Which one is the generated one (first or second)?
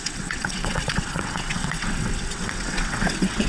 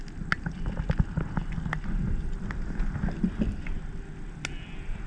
first